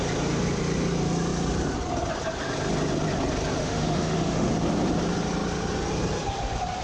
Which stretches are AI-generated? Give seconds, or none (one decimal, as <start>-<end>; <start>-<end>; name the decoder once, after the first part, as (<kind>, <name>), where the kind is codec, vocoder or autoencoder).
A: 3.6-4.5 (autoencoder, DAC-VAE)